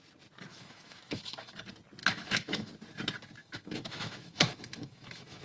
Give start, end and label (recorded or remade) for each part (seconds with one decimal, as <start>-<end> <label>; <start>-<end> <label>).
0.0-0.5 recorded; 0.5-1.5 remade; 1.5-2.0 recorded; 2.0-2.7 remade; 2.7-3.4 recorded; 3.4-5.4 remade